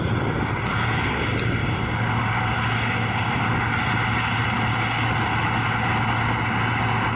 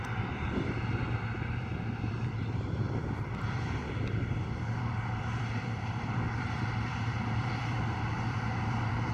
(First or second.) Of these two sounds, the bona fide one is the first